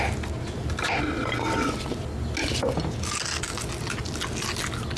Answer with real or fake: real